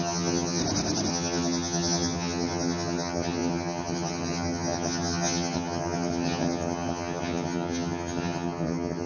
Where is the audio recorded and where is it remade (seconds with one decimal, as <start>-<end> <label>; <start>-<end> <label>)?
0.0-0.6 remade; 0.6-1.1 recorded; 1.1-9.1 remade